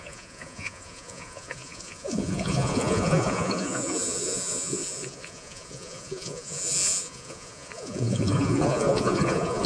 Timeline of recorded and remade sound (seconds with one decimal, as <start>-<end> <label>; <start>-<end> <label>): 0.0-9.7 remade

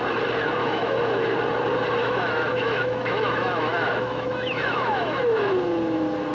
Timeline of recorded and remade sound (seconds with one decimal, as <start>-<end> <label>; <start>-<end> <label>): 0.0-0.6 recorded; 0.6-1.2 remade; 1.2-2.0 recorded; 2.0-5.5 remade; 5.5-6.3 recorded